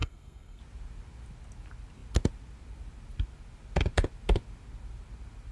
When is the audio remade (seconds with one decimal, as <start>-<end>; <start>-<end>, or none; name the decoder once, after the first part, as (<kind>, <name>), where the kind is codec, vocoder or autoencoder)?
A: 0.0-0.6 (codec, SNAC)